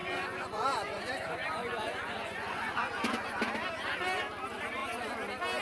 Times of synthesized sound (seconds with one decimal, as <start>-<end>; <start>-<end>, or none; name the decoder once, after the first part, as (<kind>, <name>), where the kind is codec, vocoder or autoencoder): 0.0-3.4 (vocoder, Vocos)